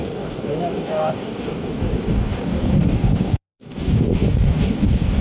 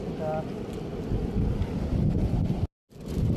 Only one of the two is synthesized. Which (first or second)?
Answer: first